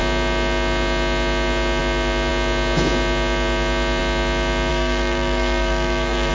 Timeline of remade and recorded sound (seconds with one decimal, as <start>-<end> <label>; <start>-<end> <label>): 0.0-4.7 recorded; 4.7-6.3 remade